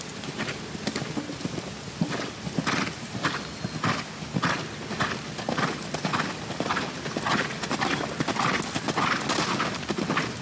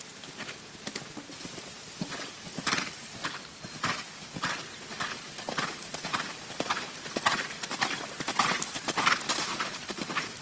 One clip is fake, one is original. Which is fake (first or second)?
second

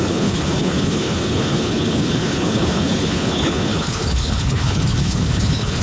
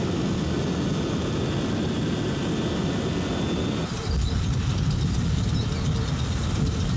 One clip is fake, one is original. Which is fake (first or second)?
first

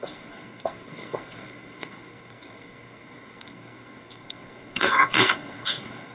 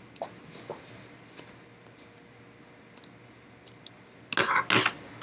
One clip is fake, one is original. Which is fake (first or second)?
first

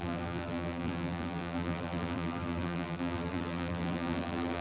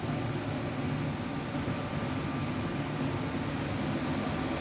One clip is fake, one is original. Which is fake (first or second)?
first